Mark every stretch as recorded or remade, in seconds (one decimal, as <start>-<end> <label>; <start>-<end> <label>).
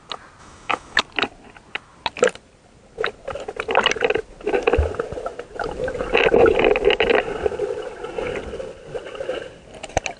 0.0-0.4 recorded; 0.4-1.0 remade; 1.0-10.2 recorded